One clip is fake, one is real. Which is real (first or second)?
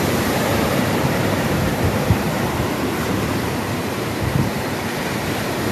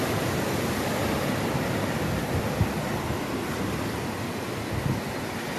second